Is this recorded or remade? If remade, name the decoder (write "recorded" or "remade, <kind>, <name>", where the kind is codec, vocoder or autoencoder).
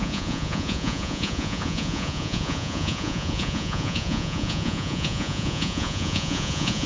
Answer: remade, vocoder, Vocos